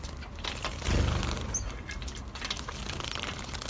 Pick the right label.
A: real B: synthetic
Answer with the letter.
A